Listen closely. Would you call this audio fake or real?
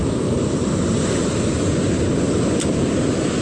real